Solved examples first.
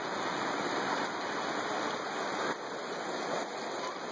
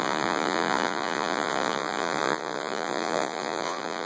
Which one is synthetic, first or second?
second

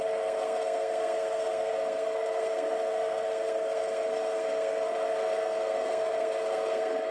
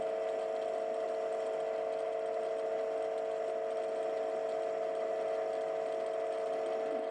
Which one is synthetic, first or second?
first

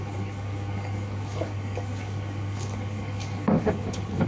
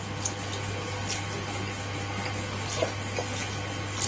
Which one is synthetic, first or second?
first